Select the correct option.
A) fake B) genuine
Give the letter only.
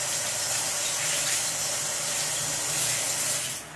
B